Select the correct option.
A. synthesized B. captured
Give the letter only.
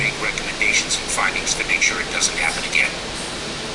B